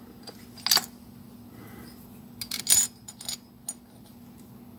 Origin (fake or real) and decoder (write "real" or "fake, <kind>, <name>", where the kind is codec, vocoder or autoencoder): real